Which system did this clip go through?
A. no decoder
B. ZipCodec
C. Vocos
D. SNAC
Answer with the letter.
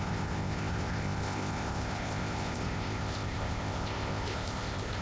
B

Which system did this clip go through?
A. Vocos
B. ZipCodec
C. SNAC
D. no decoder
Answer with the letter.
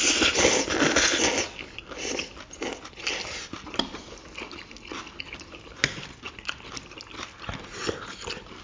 D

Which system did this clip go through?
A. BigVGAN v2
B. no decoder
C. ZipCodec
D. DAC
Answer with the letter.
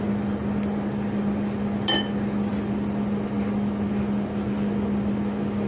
B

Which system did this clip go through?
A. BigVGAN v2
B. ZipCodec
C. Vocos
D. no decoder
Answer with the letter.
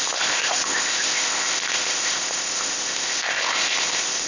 B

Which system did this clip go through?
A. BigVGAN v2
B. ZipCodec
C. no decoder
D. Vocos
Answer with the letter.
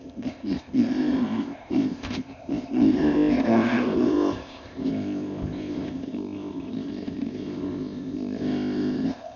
B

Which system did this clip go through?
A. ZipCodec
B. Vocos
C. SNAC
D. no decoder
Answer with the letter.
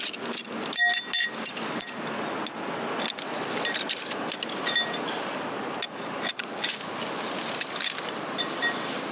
D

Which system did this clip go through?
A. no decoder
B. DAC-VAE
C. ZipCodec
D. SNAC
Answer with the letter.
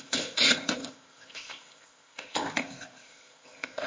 C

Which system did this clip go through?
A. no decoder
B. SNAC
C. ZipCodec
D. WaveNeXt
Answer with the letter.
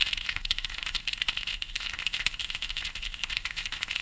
C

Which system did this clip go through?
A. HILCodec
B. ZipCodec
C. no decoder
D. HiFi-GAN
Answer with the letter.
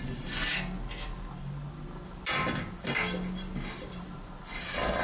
C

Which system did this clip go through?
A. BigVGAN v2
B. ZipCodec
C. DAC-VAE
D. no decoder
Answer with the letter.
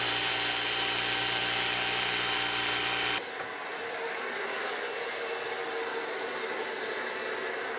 D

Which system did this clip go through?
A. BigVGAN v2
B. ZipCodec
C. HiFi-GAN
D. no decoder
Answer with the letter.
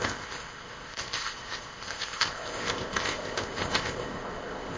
B